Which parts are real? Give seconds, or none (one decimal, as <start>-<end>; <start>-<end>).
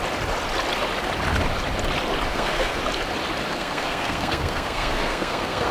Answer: 0.0-2.3; 2.8-3.5